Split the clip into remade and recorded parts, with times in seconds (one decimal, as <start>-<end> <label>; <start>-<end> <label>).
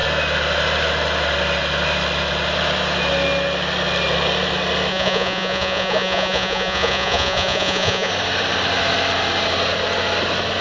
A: 0.0-4.9 recorded; 4.9-8.1 remade; 8.1-10.6 recorded